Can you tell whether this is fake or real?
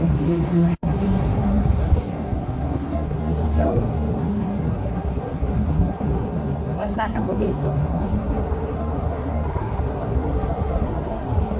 fake